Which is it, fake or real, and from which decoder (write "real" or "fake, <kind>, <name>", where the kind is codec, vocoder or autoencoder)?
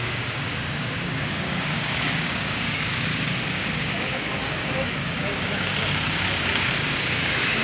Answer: fake, codec, DAC